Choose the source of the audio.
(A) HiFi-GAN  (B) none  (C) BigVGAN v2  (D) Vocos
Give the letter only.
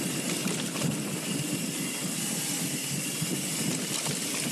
B